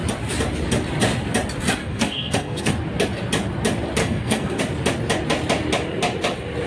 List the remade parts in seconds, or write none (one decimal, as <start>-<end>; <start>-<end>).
1.8-2.7; 4.0-4.6